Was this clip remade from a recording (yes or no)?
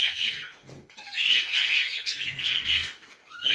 yes